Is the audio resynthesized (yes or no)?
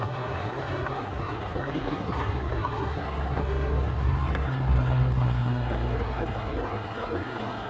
yes